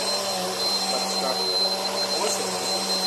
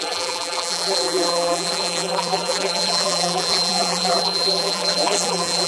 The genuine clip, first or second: first